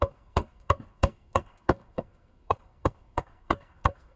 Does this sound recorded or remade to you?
remade